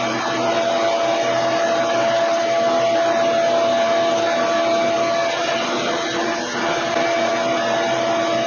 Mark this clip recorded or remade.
recorded